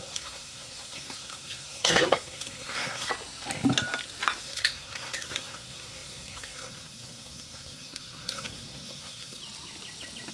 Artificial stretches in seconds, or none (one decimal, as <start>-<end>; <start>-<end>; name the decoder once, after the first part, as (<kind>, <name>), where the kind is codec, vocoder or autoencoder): 0.0-3.1 (codec, SNAC); 4.4-9.4